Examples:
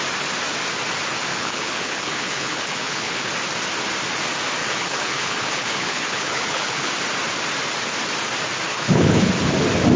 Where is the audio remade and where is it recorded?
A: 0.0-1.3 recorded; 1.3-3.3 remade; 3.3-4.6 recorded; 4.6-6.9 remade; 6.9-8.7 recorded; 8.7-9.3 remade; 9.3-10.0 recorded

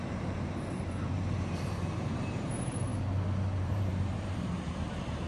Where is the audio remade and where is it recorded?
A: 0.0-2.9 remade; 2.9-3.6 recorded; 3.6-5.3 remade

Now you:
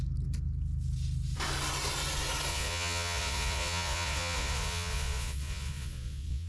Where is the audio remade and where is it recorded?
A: 0.0-2.5 recorded; 2.5-6.5 remade

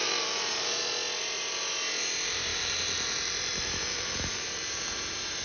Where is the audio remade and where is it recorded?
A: 0.0-0.8 remade; 0.8-2.5 recorded; 2.5-5.4 remade